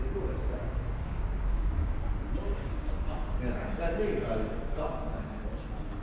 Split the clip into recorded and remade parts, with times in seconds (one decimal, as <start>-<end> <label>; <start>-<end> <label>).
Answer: 0.0-0.6 recorded; 0.6-2.0 remade; 2.0-2.6 recorded; 2.6-3.4 remade; 3.4-6.0 recorded